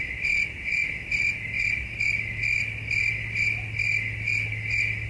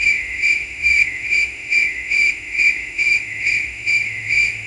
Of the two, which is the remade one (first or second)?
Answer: second